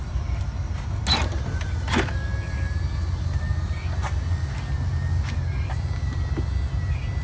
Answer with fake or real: real